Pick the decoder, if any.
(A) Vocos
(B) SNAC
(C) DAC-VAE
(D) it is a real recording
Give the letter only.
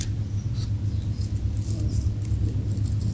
D